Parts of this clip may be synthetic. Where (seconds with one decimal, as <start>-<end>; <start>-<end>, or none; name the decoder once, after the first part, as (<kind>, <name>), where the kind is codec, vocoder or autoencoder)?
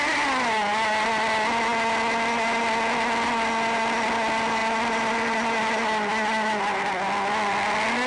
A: none